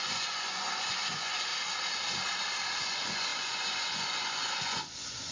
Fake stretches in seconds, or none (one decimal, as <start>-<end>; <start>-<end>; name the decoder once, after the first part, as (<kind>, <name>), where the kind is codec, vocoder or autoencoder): 0.0-1.5 (vocoder, Vocos); 2.8-5.3